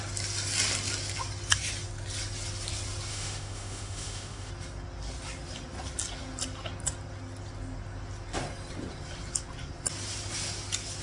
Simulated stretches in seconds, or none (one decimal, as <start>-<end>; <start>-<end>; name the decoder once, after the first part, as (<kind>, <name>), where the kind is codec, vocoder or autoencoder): 3.1-4.5 (autoencoder, DAC-VAE)